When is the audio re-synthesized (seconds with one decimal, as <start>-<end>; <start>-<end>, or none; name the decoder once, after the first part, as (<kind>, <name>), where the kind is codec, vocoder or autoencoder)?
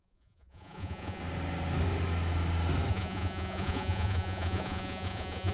0.0-1.2 (vocoder, Vocos); 2.9-5.5